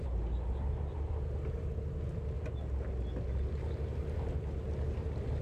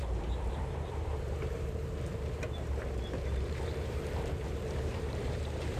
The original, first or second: first